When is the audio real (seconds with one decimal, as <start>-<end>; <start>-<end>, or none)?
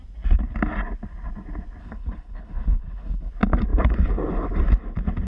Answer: 0.0-1.8; 3.3-5.3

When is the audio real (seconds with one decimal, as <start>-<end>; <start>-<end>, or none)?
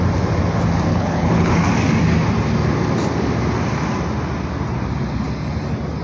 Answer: 0.0-0.9; 1.5-6.0